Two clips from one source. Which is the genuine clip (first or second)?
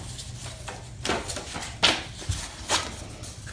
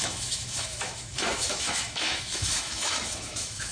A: first